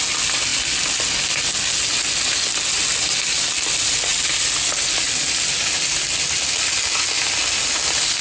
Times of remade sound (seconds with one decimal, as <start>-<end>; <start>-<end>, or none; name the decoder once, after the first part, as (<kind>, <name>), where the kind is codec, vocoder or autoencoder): none